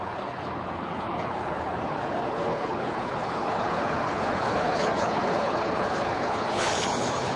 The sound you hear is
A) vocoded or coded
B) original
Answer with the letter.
A